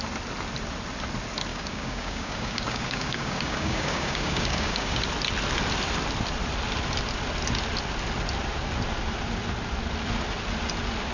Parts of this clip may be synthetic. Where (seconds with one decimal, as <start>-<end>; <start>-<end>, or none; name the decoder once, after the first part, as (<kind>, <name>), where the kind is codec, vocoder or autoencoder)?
1.5-5.0 (codec, DAC)